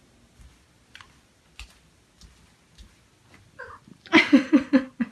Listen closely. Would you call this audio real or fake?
real